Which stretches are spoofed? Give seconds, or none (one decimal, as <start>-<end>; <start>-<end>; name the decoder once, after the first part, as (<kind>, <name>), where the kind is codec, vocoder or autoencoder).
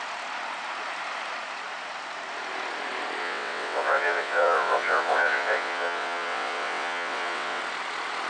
3.2-7.6 (vocoder, WaveNeXt)